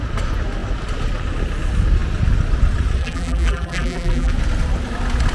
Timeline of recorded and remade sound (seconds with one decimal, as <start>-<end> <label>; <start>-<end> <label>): 0.0-3.0 recorded; 3.0-4.3 remade; 4.3-5.3 recorded